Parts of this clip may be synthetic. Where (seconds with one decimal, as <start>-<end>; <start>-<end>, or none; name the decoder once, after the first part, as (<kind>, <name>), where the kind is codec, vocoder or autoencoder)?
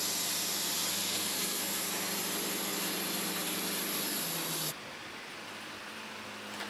0.9-1.7 (codec, SNAC)